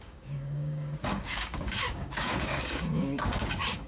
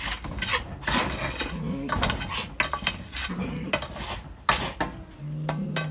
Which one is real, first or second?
second